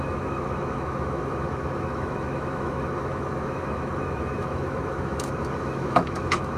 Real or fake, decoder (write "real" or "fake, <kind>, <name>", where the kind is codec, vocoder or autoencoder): fake, autoencoder, DAC-VAE